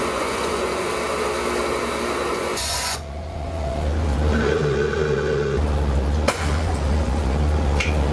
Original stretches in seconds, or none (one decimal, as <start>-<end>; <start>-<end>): 0.9-2.3